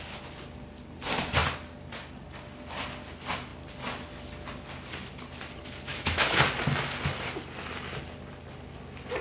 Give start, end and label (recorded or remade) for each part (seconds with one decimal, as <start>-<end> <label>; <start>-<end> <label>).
0.0-5.9 recorded; 5.9-6.4 remade; 6.4-9.2 recorded